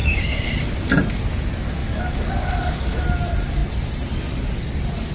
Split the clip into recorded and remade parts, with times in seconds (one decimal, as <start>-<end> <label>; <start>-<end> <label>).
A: 0.0-0.5 remade; 0.5-1.8 recorded; 1.8-3.0 remade; 3.0-5.1 recorded